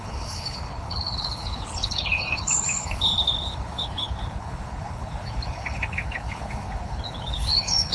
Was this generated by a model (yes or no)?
yes